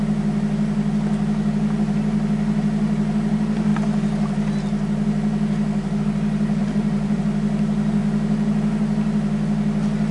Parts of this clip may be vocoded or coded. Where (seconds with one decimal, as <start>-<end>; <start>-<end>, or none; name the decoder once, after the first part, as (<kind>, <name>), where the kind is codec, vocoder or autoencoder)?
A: 6.6-7.2 (vocoder, BigVGAN v2)